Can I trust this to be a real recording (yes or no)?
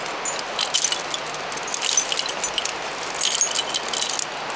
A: yes